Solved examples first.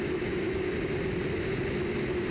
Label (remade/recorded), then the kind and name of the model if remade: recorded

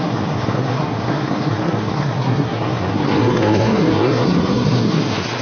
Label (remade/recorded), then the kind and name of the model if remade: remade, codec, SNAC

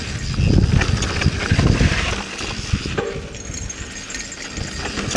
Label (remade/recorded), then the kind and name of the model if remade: recorded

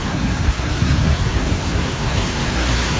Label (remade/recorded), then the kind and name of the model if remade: remade, codec, SNAC